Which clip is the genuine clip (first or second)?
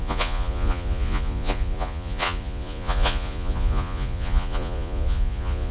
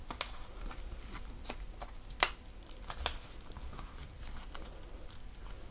second